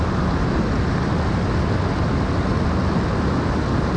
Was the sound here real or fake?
real